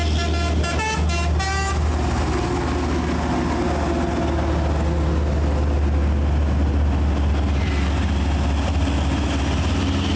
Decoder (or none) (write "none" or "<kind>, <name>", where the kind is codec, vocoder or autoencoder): none